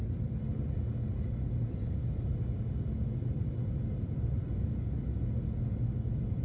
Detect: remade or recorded recorded